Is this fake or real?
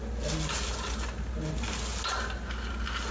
real